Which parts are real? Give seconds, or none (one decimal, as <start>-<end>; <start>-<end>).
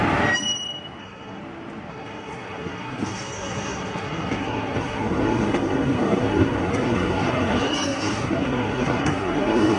0.0-1.0; 1.4-1.9